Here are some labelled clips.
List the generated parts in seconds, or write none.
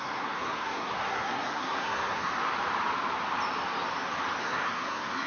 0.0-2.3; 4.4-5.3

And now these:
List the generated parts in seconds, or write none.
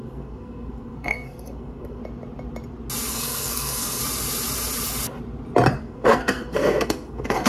0.0-2.0; 3.1-4.0; 5.8-7.5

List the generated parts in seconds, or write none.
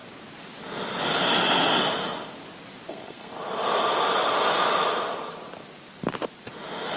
2.9-3.3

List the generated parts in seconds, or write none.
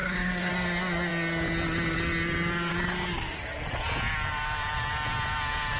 0.0-0.5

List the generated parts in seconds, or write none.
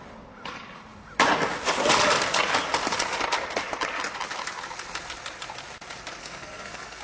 6.2-7.0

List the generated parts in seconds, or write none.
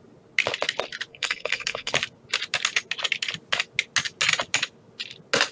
1.1-1.9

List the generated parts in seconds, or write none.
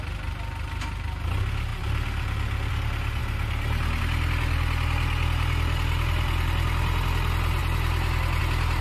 none